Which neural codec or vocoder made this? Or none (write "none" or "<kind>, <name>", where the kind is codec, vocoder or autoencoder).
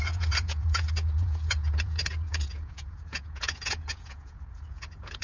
vocoder, Vocos